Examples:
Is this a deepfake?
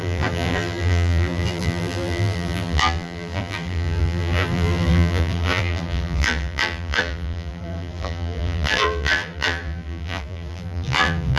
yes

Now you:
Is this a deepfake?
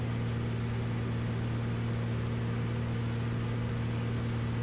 no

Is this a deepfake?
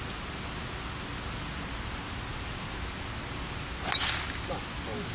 no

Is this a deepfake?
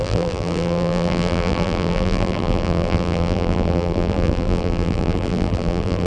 yes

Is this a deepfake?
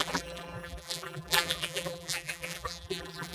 yes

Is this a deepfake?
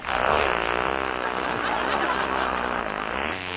no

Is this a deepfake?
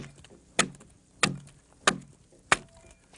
no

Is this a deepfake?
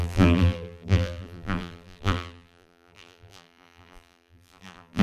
yes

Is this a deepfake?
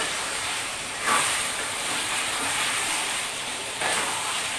yes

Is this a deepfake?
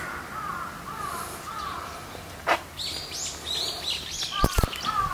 no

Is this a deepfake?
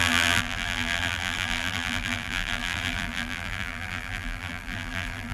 yes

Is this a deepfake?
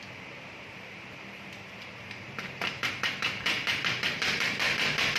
yes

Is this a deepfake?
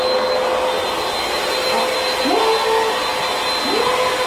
no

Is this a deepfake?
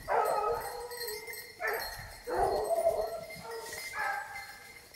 no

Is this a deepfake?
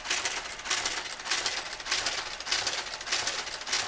no